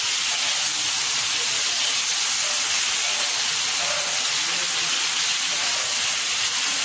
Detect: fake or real real